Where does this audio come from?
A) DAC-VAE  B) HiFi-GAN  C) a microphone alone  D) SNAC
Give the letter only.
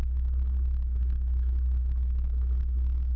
A